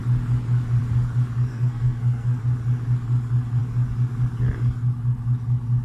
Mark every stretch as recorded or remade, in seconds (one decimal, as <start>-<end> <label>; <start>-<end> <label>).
0.0-1.5 recorded; 1.5-2.4 remade; 2.4-5.8 recorded